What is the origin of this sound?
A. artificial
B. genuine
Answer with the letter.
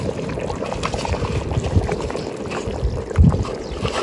B